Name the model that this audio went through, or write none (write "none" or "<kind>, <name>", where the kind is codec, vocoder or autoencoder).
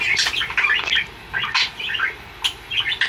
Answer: none